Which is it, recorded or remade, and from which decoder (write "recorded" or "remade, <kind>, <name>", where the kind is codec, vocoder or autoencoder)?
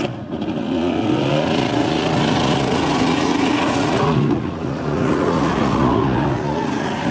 remade, vocoder, Vocos